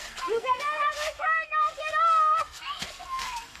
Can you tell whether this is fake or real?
fake